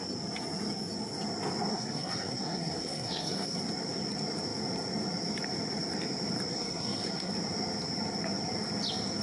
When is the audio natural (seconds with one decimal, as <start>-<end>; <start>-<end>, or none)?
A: 0.0-1.7; 3.6-6.5; 7.3-9.2